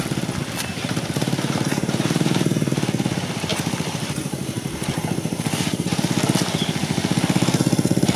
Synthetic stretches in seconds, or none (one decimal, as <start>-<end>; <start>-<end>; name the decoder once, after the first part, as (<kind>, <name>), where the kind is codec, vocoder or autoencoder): 0.7-2.7 (vocoder, BigVGAN v2); 3.5-6.0